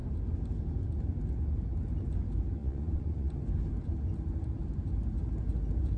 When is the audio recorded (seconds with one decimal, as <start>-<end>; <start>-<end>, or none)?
0.0-2.6; 3.4-6.0